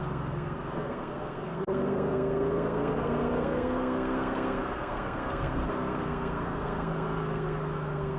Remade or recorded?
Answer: remade